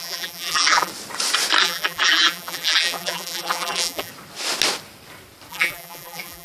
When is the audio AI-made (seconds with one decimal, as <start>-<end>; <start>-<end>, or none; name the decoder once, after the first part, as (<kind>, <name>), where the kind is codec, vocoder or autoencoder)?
0.0-0.9 (vocoder, BigVGAN v2); 1.6-4.1; 5.5-6.4